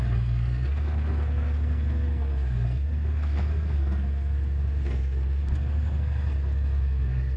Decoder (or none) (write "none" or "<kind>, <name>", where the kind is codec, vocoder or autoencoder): codec, SNAC